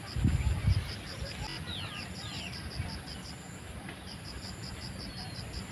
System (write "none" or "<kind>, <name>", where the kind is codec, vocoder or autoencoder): none